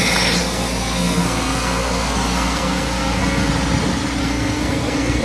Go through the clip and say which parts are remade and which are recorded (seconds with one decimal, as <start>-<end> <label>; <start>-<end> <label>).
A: 0.0-0.4 recorded; 0.4-3.5 remade; 3.5-4.2 recorded; 4.2-5.2 remade